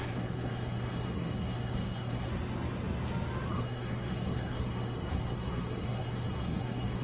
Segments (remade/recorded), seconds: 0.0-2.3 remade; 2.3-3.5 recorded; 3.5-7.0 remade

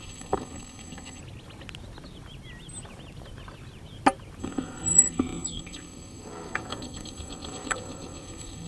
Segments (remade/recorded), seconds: 0.0-1.2 remade; 1.2-4.4 recorded; 4.4-8.7 remade

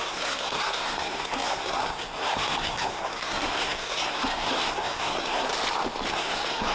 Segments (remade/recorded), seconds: 0.0-5.5 remade; 5.5-6.1 recorded; 6.1-6.7 remade

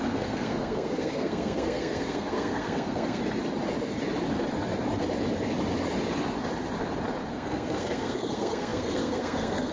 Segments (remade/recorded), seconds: 0.0-3.2 remade; 3.2-7.3 recorded; 7.3-9.7 remade

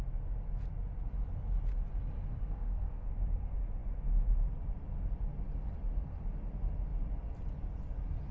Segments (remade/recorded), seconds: 0.0-2.4 recorded; 2.4-3.1 remade; 3.1-8.3 recorded

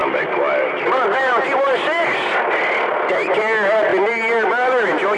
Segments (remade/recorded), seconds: 0.0-5.2 recorded